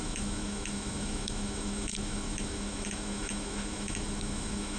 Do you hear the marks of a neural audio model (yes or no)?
yes